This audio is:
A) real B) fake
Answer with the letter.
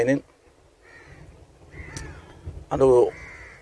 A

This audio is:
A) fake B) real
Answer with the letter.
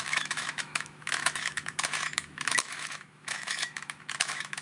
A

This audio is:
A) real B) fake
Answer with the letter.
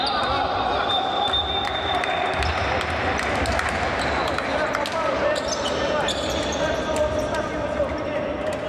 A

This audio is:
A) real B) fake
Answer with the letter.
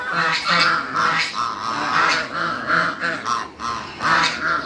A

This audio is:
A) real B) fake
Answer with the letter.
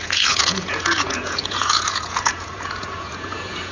B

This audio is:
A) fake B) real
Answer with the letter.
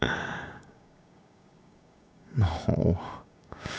A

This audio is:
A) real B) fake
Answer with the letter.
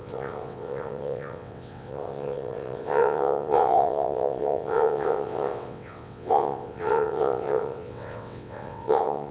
B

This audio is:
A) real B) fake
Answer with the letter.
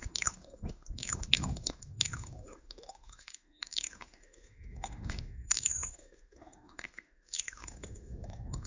B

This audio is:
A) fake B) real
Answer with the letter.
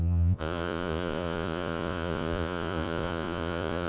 A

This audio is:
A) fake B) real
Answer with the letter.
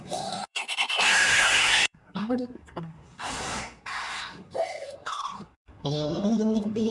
A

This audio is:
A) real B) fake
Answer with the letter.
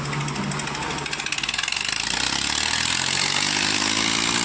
A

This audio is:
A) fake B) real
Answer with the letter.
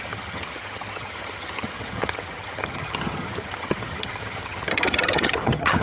A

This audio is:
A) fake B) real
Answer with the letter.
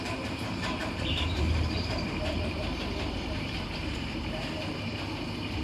A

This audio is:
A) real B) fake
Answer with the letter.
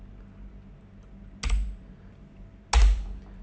A